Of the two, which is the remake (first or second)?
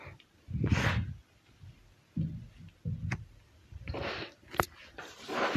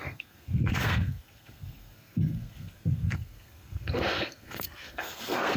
second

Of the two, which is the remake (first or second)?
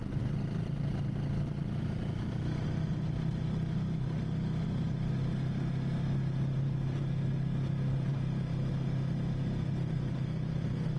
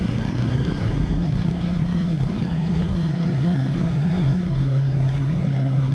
second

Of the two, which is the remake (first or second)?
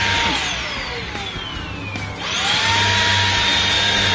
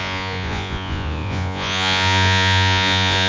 second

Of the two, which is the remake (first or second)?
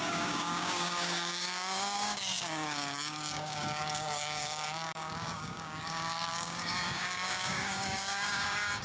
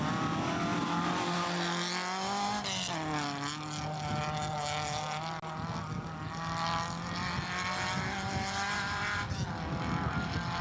first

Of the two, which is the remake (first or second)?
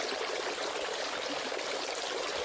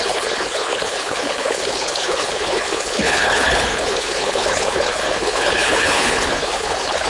second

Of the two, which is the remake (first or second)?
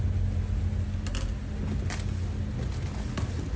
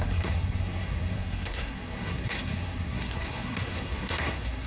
second